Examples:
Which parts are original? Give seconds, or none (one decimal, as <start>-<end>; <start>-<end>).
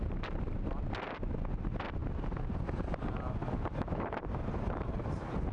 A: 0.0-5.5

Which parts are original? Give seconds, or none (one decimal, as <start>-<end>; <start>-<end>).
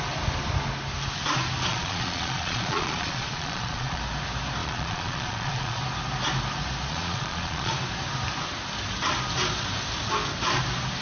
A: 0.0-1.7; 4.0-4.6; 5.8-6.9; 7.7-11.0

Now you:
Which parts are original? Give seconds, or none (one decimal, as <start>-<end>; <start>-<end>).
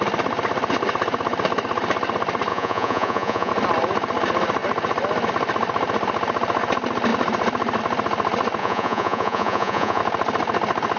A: 0.0-2.5; 3.5-8.6; 10.0-11.0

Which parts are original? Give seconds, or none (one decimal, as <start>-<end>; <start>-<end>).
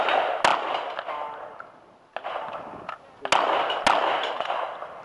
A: 0.0-5.0